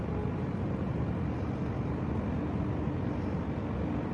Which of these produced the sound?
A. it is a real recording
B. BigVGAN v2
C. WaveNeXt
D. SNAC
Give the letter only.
A